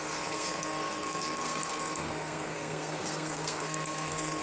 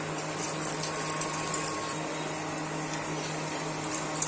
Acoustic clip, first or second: second